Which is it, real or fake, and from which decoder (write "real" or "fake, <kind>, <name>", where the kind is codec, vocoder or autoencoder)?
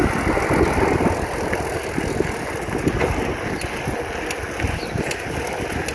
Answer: real